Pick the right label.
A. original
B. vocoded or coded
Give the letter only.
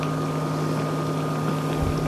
A